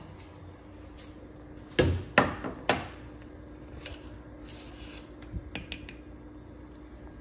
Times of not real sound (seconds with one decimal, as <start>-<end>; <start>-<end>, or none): none